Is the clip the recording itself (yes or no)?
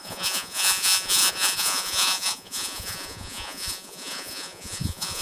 no